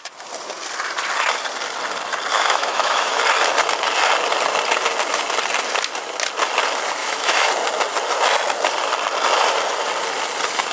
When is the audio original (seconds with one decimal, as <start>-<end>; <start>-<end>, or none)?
0.0-2.3; 3.2-7.0; 7.5-10.7